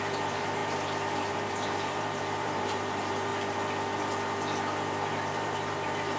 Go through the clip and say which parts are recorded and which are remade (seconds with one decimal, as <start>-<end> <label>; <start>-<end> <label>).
0.0-3.3 remade; 3.3-5.1 recorded; 5.1-6.2 remade